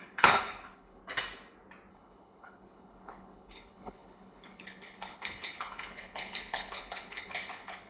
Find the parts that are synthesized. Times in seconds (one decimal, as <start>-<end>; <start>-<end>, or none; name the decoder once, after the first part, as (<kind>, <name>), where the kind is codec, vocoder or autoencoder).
0.0-1.0 (codec, HILCodec); 1.9-7.9